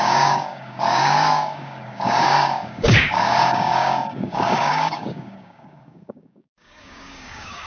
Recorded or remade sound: remade